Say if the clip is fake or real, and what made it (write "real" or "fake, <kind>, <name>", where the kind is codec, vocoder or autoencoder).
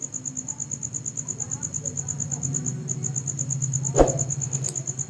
real